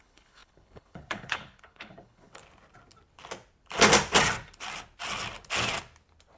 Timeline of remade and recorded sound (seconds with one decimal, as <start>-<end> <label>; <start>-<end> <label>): 0.0-2.4 remade; 2.4-6.4 recorded